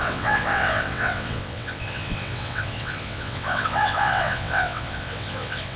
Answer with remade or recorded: remade